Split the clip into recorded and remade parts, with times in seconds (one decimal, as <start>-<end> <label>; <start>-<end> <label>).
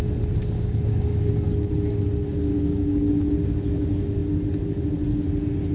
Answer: 0.0-0.4 recorded; 0.4-1.3 remade; 1.3-2.5 recorded; 2.5-3.1 remade; 3.1-5.7 recorded